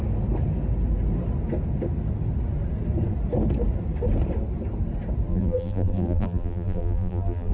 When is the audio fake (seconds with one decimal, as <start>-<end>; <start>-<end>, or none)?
5.3-7.5